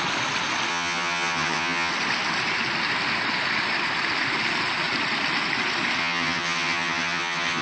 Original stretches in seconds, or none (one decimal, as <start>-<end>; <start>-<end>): 0.0-0.7; 1.9-6.0

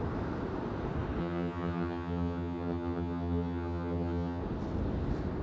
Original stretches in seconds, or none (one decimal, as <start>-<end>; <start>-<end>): 0.0-1.2; 4.4-5.4